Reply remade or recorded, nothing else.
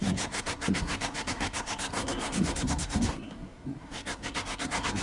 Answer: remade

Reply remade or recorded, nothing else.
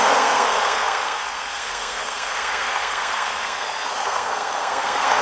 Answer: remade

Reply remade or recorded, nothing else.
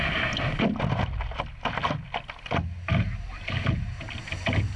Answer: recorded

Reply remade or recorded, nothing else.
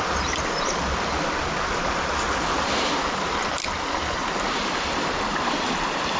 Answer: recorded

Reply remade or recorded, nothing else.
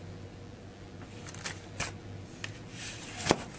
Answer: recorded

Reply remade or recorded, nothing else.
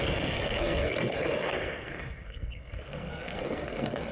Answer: remade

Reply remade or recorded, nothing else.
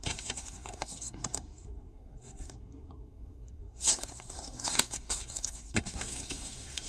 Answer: remade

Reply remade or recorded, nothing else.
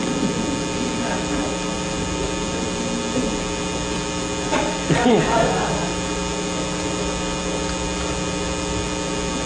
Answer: recorded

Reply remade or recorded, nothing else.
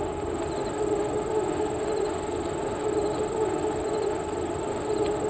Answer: recorded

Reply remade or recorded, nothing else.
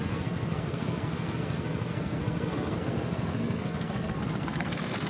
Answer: remade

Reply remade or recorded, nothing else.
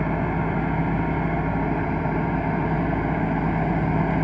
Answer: recorded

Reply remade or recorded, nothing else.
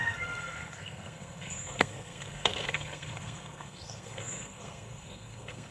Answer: remade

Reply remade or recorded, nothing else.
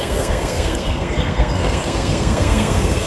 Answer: remade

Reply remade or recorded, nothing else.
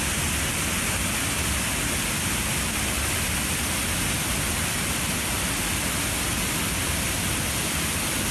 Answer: recorded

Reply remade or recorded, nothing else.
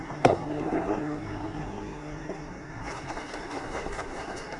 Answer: remade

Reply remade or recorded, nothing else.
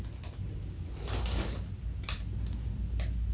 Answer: recorded